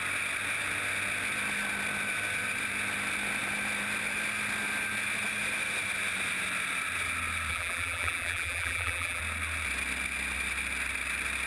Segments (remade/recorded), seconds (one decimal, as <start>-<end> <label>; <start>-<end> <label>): 0.0-7.5 recorded; 7.5-9.2 remade; 9.2-11.5 recorded